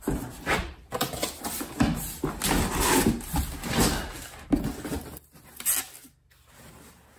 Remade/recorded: recorded